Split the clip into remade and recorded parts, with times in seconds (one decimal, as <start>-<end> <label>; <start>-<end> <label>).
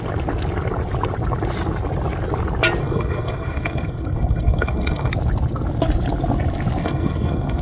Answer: 0.0-2.8 recorded; 2.8-5.1 remade; 5.1-6.8 recorded; 6.8-7.6 remade